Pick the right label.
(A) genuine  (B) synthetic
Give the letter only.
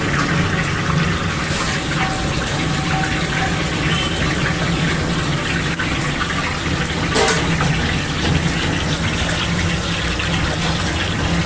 A